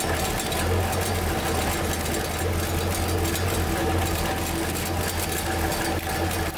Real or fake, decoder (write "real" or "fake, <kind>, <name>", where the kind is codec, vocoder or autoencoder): real